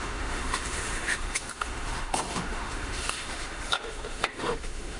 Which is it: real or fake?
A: fake